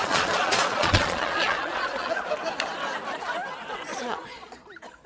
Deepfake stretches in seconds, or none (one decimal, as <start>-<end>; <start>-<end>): 0.0-2.3; 3.9-4.6